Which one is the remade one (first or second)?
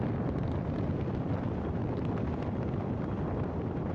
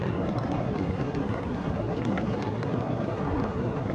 second